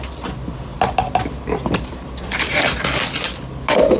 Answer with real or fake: real